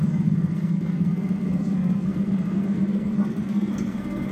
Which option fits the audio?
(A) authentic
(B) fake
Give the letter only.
B